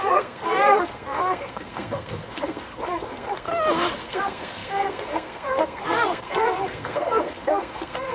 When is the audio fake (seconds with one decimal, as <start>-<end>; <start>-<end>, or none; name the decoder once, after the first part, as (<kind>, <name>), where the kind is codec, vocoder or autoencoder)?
0.0-3.5 (codec, SNAC); 4.0-8.1